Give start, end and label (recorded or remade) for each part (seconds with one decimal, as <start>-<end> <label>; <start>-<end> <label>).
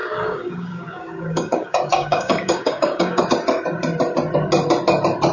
0.0-3.2 remade; 3.2-5.3 recorded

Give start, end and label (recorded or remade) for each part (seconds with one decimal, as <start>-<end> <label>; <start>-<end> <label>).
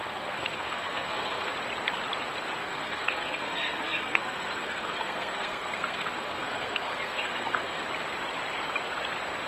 0.0-1.5 remade; 1.5-2.6 recorded; 2.6-7.8 remade; 7.8-9.5 recorded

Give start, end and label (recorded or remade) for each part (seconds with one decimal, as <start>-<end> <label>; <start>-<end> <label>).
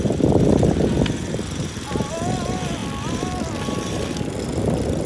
0.0-5.1 recorded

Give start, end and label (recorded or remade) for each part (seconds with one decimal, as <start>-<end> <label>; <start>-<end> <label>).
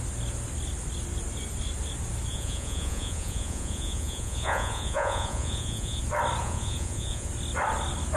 0.0-2.3 recorded; 2.3-6.0 remade; 6.0-6.4 recorded; 6.4-7.3 remade; 7.3-8.2 recorded